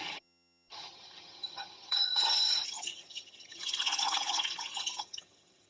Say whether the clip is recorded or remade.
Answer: remade